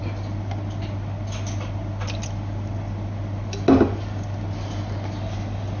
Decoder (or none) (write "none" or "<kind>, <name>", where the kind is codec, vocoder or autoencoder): none